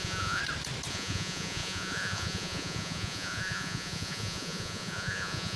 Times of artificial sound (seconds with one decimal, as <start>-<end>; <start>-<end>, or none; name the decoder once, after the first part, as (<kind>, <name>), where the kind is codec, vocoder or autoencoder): 0.0-0.4 (vocoder, Vocos); 0.9-5.6